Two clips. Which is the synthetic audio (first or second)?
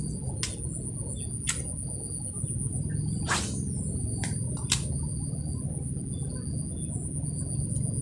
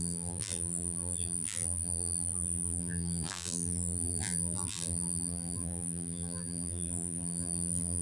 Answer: second